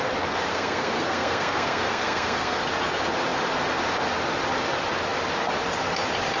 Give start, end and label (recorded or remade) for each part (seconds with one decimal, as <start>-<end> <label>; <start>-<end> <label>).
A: 0.0-0.5 recorded; 0.5-2.6 remade; 2.6-6.4 recorded